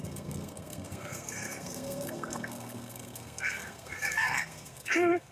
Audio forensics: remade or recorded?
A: remade